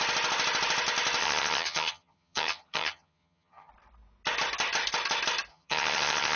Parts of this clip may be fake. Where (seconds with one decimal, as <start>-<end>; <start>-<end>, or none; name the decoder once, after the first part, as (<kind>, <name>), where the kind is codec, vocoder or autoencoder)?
1.2-3.7 (vocoder, HiFi-GAN); 5.5-6.4